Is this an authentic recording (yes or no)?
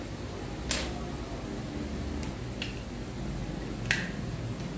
yes